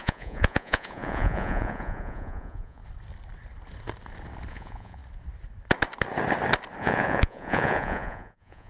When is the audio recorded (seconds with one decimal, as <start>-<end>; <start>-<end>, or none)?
2.8-4.5; 5.0-6.8